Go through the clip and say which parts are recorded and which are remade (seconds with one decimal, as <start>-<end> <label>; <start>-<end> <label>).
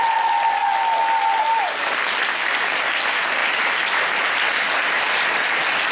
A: 0.0-5.9 recorded